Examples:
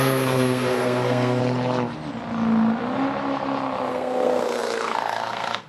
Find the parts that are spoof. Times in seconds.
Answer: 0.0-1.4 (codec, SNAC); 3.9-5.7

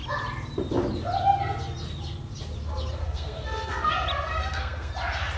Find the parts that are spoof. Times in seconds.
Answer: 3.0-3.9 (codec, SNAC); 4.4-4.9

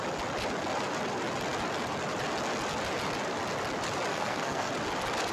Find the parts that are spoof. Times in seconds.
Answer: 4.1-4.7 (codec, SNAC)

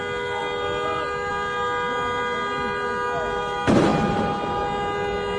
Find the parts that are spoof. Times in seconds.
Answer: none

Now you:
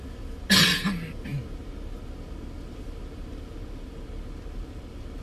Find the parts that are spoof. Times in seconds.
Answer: none